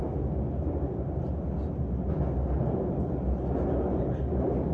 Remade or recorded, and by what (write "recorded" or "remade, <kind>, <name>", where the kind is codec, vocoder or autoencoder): recorded